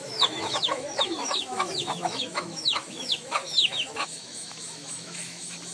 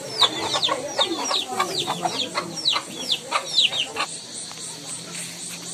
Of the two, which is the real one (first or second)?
second